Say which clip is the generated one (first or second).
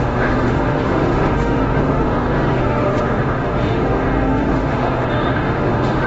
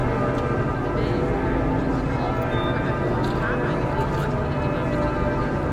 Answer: first